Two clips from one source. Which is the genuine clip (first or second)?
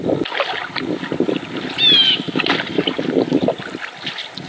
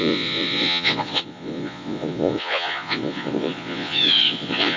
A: first